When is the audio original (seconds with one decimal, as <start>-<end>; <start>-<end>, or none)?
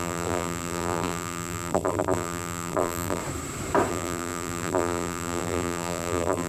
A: 3.2-3.9